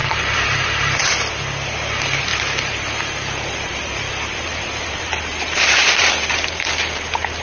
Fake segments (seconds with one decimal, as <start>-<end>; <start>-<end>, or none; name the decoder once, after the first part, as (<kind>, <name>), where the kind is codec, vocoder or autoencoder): 0.0-1.0 (vocoder, BigVGAN v2); 2.3-6.6